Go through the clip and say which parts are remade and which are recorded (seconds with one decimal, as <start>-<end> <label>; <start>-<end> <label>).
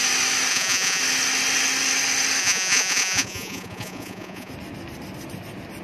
0.0-0.5 recorded; 0.5-1.0 remade; 1.0-2.4 recorded; 2.4-4.5 remade; 4.5-5.8 recorded